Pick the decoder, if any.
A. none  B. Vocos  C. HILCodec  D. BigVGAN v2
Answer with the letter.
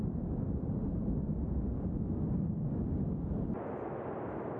A